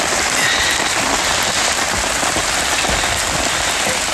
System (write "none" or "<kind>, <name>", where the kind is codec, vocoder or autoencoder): none